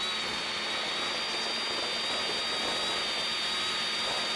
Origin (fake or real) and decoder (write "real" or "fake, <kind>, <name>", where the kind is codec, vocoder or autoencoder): real